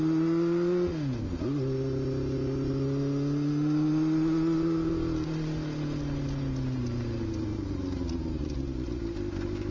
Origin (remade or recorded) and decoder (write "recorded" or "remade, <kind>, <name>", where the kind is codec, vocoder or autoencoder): recorded